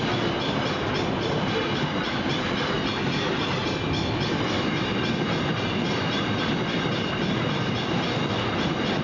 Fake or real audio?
real